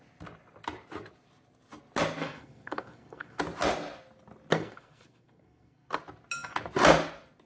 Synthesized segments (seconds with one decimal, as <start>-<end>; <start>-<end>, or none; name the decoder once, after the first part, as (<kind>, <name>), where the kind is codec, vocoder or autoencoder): 2.2-3.4 (codec, SNAC); 4.5-6.0